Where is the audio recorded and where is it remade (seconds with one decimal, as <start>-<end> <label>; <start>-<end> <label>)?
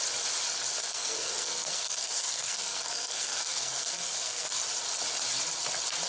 0.0-0.8 recorded; 0.8-4.5 remade; 4.5-6.1 recorded